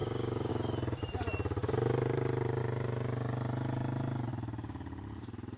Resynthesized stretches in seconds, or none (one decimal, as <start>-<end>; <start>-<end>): 0.0-0.5; 1.6-2.6